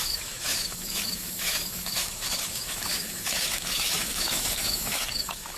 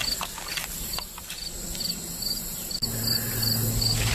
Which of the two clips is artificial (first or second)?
first